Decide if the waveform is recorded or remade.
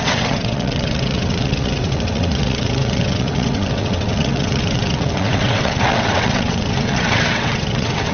remade